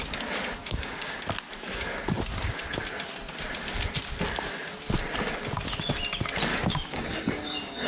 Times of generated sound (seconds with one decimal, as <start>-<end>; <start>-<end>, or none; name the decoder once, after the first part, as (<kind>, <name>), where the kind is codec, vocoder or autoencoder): 0.6-1.2 (codec, DAC); 6.5-7.9